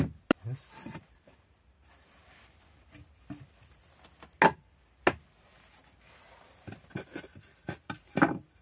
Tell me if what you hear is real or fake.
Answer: real